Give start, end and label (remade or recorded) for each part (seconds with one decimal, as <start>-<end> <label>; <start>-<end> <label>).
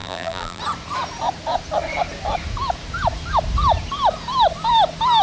0.0-0.6 remade; 0.6-5.2 recorded